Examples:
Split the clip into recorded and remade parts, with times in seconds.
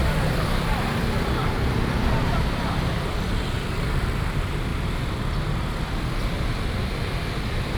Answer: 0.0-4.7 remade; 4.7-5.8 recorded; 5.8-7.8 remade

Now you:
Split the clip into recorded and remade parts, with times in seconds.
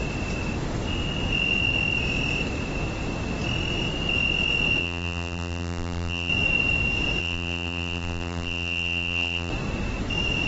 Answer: 0.0-4.8 recorded; 4.8-6.3 remade; 6.3-7.2 recorded; 7.2-9.5 remade; 9.5-10.5 recorded